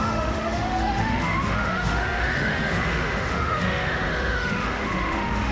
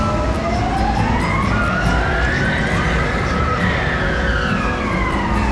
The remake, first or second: first